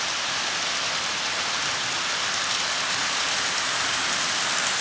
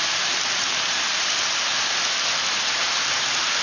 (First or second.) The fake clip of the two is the first